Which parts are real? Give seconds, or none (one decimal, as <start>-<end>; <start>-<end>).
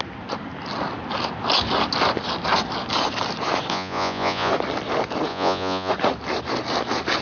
0.0-3.7; 4.5-5.3; 5.9-7.2